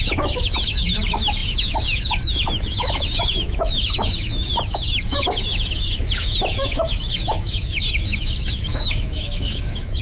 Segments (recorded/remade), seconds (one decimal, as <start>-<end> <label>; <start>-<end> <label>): 0.0-10.0 remade